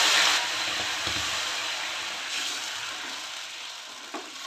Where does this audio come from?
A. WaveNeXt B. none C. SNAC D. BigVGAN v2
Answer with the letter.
B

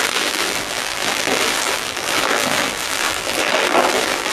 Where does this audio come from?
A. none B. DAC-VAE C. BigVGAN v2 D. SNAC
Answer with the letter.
C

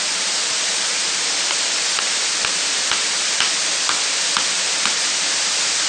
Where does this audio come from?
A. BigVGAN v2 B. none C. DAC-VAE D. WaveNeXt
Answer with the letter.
B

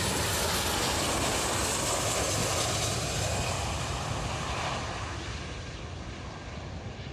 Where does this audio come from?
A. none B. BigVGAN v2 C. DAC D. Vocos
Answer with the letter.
A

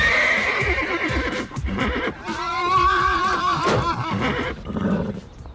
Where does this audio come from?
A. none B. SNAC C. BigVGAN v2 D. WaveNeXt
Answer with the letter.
C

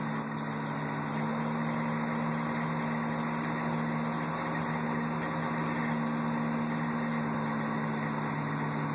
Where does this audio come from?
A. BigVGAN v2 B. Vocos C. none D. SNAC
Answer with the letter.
C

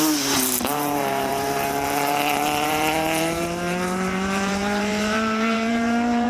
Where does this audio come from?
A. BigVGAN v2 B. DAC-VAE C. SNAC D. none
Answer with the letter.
A